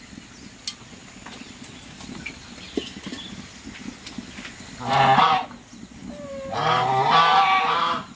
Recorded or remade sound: recorded